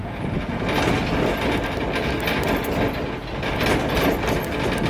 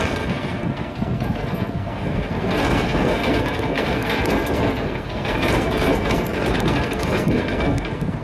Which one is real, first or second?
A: first